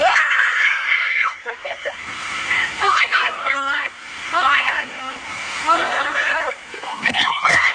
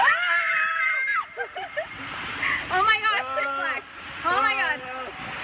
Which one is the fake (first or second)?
first